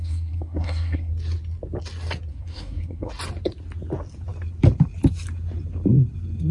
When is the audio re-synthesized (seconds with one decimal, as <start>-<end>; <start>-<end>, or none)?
0.0-1.1; 2.3-3.1